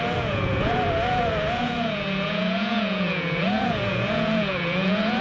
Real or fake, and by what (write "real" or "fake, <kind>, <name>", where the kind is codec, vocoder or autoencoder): fake, vocoder, Vocos